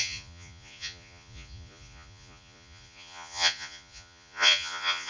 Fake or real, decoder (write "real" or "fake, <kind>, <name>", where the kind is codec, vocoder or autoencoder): fake, vocoder, Vocos